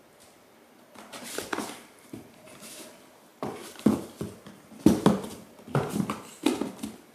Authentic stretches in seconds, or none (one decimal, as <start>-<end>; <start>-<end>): 3.3-5.8